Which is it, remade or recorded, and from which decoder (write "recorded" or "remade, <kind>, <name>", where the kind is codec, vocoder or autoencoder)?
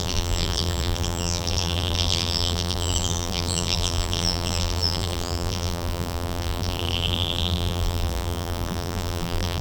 remade, vocoder, BigVGAN v2